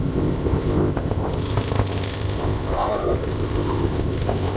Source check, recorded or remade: remade